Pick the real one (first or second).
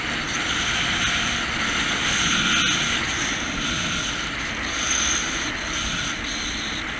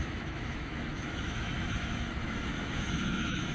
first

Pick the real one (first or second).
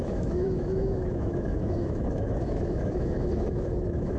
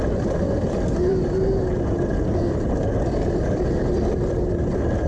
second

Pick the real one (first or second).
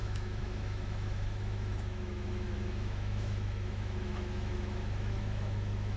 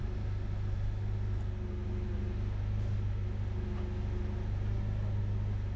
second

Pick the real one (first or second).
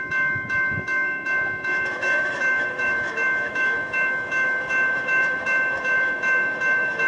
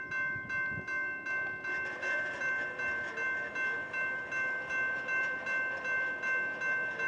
second